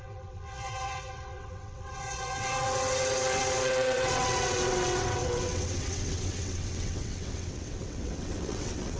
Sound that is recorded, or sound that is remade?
remade